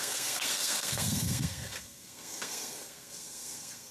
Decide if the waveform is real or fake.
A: fake